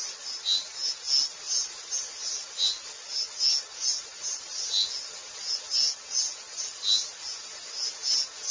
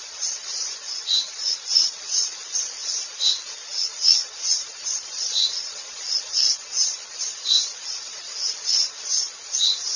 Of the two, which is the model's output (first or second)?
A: second